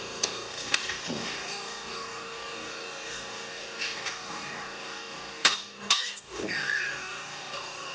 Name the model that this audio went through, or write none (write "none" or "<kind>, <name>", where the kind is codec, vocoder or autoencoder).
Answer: codec, DAC